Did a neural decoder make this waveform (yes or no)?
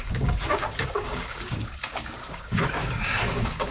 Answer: yes